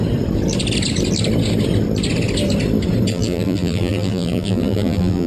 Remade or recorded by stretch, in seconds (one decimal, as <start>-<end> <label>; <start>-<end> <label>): 0.0-3.1 recorded; 3.1-5.3 remade